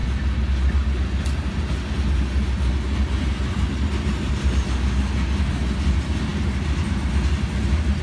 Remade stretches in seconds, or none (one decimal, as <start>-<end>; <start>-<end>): none